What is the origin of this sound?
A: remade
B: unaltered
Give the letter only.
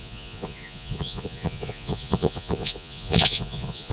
A